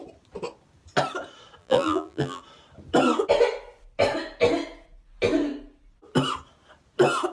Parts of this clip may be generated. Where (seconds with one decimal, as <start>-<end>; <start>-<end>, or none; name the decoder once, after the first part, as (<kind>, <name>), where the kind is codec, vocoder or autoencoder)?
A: 1.6-2.4 (vocoder, BigVGAN v2)